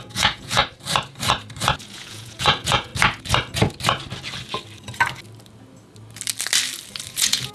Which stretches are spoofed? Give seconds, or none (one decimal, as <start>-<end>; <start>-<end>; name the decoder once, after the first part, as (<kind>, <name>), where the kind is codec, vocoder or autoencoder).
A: 0.0-0.6 (vocoder, Vocos); 1.8-2.9; 7.1-7.5